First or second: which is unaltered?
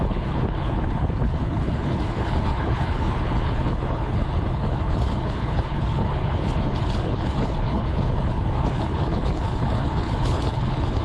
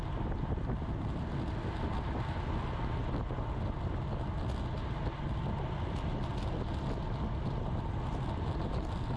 second